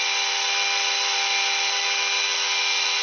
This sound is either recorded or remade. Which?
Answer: recorded